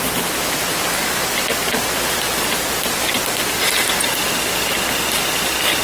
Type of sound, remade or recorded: recorded